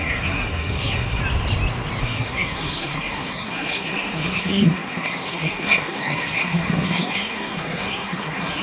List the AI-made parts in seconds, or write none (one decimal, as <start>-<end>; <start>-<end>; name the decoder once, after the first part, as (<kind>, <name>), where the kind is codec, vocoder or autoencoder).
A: 0.0-1.2 (codec, SNAC); 2.0-8.6

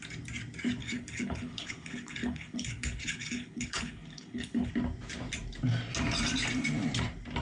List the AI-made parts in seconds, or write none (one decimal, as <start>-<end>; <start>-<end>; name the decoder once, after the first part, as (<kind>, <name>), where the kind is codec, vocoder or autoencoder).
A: 0.8-4.7 (codec, HILCodec)